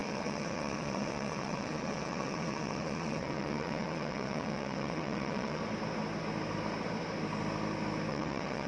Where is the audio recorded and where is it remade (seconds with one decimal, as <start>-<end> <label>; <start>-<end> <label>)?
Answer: 0.0-5.6 remade; 5.6-8.1 recorded; 8.1-8.7 remade